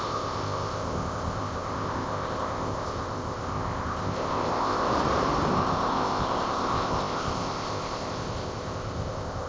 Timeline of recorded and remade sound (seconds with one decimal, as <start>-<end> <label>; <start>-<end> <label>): 0.0-4.9 remade; 4.9-5.5 recorded; 5.5-9.5 remade

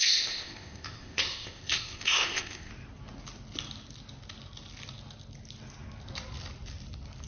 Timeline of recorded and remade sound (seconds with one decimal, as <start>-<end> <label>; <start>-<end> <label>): 0.0-2.7 remade; 2.7-7.3 recorded

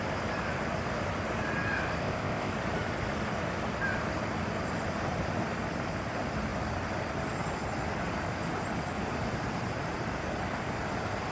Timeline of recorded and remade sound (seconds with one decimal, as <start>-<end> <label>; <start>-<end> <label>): 0.0-2.0 recorded; 2.0-2.5 remade; 2.5-11.3 recorded